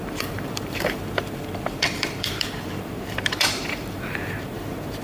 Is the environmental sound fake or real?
fake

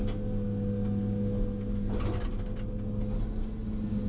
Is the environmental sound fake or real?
real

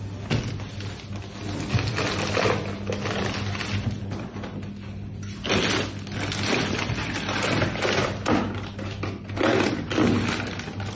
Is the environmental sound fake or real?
real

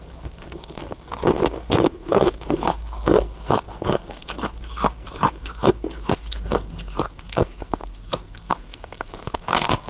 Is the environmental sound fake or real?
fake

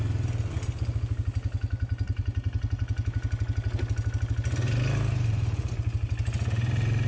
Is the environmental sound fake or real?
real